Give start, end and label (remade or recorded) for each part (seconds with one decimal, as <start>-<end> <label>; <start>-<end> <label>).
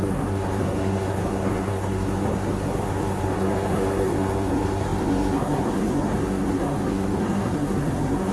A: 0.0-8.3 remade